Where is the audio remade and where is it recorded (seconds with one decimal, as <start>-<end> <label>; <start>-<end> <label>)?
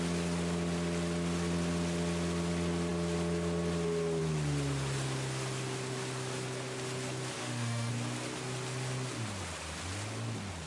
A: 0.0-7.4 recorded; 7.4-7.9 remade; 7.9-10.7 recorded